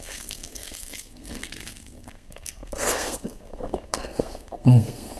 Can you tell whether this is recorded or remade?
remade